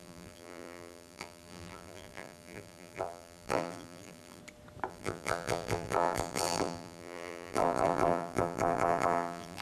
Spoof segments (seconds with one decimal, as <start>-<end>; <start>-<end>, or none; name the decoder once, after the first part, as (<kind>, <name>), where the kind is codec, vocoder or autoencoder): 0.0-4.4 (vocoder, BigVGAN v2); 4.9-9.6